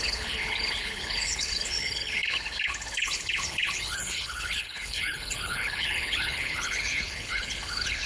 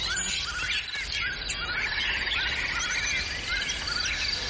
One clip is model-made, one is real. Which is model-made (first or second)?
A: first